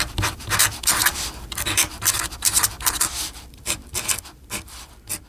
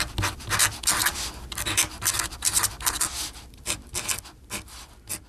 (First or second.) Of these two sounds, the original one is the second